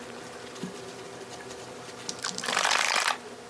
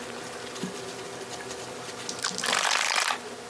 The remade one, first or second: first